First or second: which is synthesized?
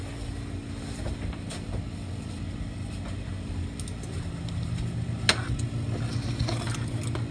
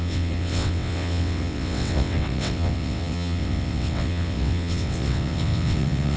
second